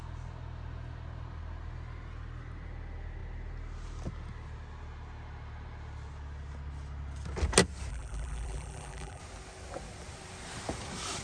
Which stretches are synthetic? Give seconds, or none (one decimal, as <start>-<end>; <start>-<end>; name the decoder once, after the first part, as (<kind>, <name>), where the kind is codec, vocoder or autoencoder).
7.9-9.2 (vocoder, BigVGAN v2)